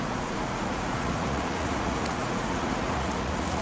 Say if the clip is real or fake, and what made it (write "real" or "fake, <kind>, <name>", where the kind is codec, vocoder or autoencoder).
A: fake, vocoder, Vocos